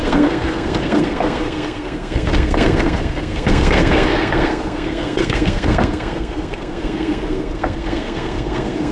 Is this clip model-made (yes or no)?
yes